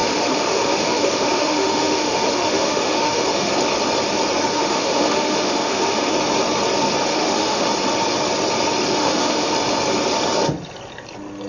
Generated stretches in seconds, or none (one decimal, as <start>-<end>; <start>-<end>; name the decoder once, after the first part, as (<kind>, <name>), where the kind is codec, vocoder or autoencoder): 0.0-3.5 (autoencoder, DAC-VAE); 4.5-6.1; 7.1-7.7; 9.0-9.5